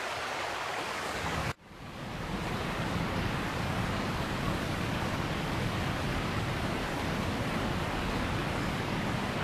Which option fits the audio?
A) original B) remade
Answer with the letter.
B